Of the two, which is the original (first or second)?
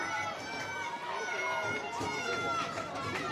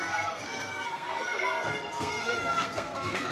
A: first